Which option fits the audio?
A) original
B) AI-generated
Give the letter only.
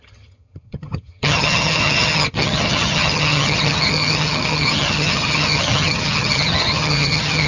B